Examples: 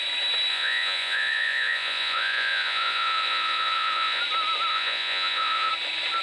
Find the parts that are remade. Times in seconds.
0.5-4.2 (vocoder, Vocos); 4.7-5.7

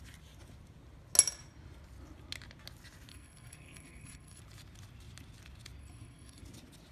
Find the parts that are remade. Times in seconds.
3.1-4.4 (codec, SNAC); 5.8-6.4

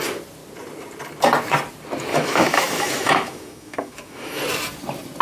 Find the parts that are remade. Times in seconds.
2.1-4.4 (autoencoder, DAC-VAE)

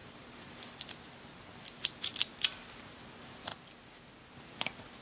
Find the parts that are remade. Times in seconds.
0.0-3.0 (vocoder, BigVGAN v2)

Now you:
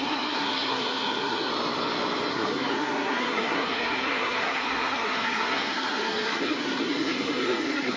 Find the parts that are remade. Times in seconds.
0.0-1.5 (codec, SNAC); 2.3-8.0

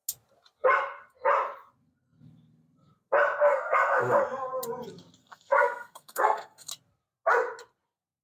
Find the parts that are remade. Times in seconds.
3.4-4.2 (codec, SNAC); 5.2-6.7